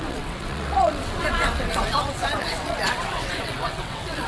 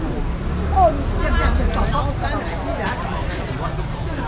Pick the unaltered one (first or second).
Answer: second